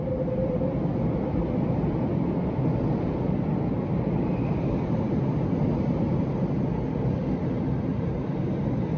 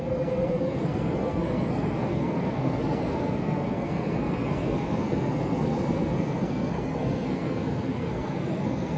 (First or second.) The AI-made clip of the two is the second